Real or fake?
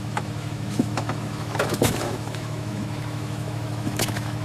fake